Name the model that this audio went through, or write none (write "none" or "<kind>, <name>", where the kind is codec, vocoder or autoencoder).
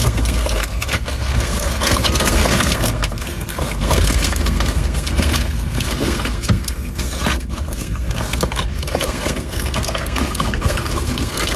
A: codec, SNAC